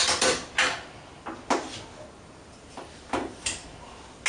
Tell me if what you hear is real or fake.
real